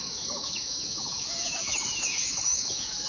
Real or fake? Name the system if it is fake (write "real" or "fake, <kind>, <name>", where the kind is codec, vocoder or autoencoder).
fake, autoencoder, DAC-VAE